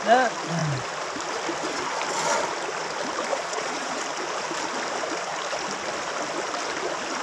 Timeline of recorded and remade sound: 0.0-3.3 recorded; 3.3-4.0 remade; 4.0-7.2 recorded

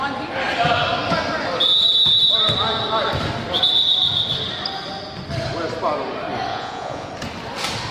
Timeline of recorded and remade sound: 0.0-6.5 recorded; 6.5-7.1 remade; 7.1-7.9 recorded